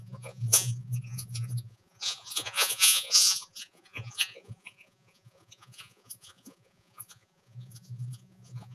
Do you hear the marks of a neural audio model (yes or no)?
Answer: yes